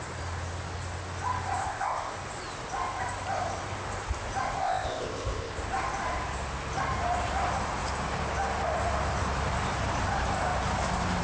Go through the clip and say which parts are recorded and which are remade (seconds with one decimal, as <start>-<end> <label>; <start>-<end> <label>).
0.0-1.6 recorded; 1.6-2.1 remade; 2.1-4.6 recorded; 4.6-5.6 remade; 5.6-11.2 recorded